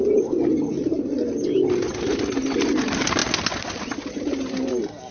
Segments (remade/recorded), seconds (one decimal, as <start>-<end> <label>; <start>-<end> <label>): 0.0-5.1 recorded